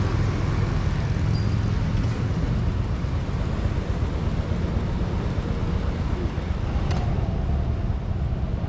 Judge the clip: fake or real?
real